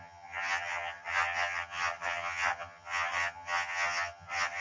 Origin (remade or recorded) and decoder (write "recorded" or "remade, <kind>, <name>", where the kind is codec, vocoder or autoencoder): remade, vocoder, HiFi-GAN